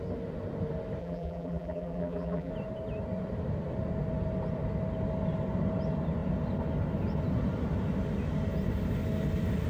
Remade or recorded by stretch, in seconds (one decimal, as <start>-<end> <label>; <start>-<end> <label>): 0.0-1.0 recorded; 1.0-2.5 remade; 2.5-9.7 recorded